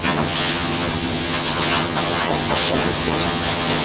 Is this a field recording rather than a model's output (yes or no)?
no